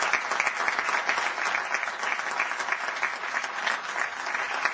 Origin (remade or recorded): recorded